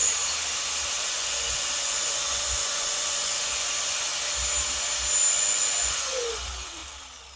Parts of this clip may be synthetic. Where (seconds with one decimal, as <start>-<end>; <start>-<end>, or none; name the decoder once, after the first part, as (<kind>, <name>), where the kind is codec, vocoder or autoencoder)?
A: 1.0-4.1 (vocoder, Vocos); 5.3-6.8